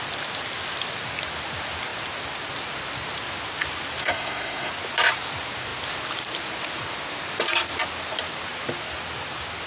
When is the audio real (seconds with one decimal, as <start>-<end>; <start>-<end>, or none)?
0.0-4.0; 4.7-9.7